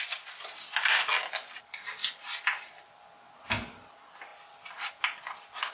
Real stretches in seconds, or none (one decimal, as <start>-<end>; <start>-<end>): 0.0-5.7